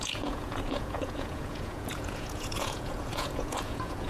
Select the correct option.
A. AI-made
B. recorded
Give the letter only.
A